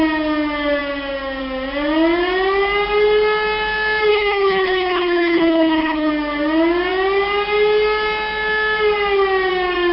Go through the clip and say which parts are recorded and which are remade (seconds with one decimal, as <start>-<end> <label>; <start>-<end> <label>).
0.0-4.1 recorded; 4.1-6.1 remade; 6.1-9.9 recorded